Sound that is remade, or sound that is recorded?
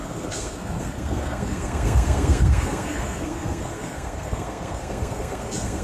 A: remade